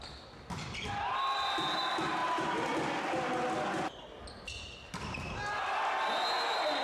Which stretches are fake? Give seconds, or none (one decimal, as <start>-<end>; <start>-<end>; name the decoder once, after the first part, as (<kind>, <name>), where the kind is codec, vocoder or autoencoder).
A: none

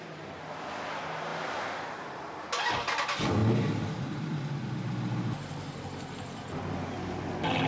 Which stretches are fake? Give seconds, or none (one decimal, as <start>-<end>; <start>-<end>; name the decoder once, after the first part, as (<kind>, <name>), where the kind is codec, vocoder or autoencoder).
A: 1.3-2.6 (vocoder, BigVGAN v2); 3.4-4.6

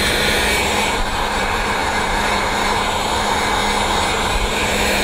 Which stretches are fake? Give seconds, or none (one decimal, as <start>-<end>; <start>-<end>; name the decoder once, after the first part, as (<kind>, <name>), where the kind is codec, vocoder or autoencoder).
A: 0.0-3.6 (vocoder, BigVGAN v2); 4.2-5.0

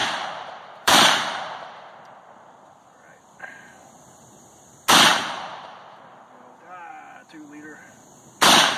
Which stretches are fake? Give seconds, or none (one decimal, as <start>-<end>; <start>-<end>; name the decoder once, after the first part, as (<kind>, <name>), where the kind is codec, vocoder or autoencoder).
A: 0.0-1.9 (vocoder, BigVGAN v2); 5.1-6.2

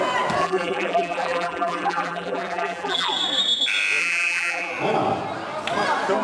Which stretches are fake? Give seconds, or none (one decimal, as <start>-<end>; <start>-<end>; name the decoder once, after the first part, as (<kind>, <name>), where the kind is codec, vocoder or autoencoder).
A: 0.4-3.1 (vocoder, BigVGAN v2); 4.0-4.7

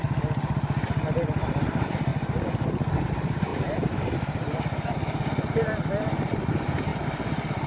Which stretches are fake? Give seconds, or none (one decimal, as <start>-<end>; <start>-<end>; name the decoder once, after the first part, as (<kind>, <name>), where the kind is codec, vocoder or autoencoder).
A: 0.0-2.1 (vocoder, BigVGAN v2); 3.0-6.9

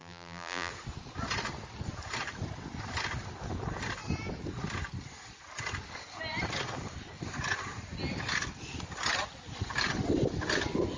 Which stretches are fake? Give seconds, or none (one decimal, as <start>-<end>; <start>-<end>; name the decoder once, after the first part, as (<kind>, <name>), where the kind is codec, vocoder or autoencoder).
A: 0.0-0.7 (vocoder, BigVGAN v2)

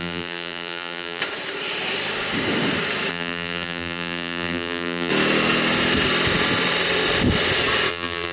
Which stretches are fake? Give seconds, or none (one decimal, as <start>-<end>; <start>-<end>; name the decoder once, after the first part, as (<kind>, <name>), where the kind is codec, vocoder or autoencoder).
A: 0.0-1.2 (vocoder, BigVGAN v2); 3.1-5.1; 7.9-8.3